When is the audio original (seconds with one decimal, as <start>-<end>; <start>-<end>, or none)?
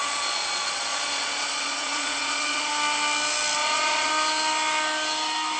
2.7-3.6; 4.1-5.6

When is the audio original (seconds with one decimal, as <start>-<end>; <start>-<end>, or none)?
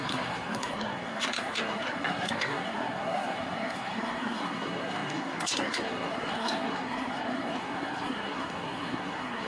none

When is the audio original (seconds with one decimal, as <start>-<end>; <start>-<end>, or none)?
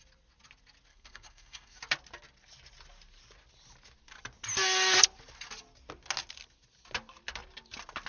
0.0-0.9; 1.8-8.1